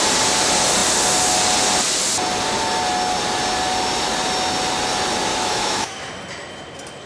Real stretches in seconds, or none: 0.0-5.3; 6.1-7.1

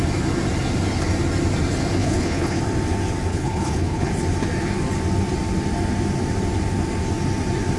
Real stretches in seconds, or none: 0.0-2.0; 2.6-3.3; 4.1-7.8

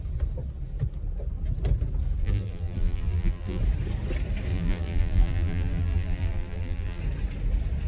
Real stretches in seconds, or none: 0.0-2.2; 3.6-4.5; 7.0-7.9

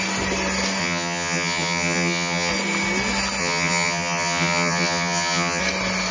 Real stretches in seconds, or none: 0.0-0.8; 2.5-3.4; 5.6-6.1

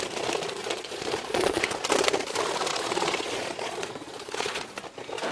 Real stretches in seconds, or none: 0.0-0.6; 1.6-2.7; 4.8-5.3

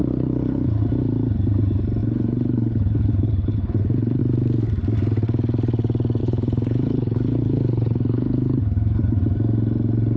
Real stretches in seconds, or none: 0.8-2.0; 4.2-6.2; 9.2-10.2

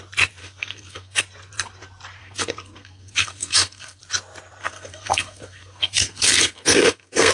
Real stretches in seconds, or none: 0.0-0.4; 1.2-2.2; 4.0-4.6

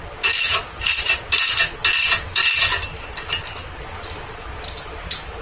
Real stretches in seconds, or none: 1.6-4.8